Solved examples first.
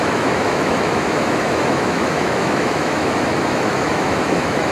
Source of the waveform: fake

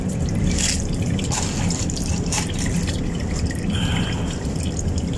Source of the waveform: real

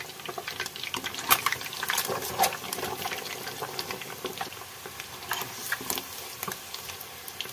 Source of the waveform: real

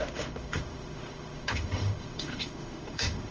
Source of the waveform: fake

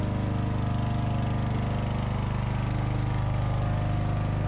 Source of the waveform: real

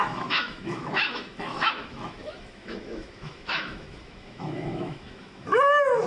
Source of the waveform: fake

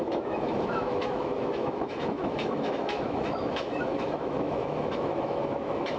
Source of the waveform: fake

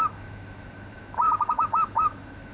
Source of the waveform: fake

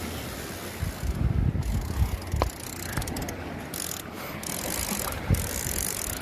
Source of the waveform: real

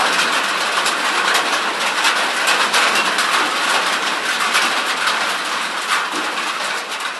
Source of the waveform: real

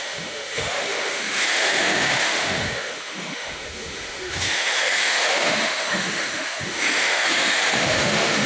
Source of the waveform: fake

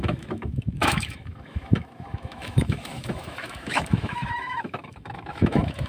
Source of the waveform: fake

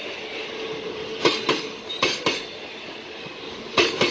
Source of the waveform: real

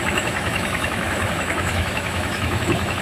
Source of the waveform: fake